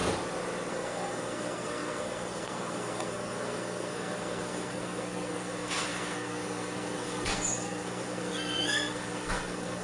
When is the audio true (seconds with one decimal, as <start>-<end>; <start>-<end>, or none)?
0.0-0.7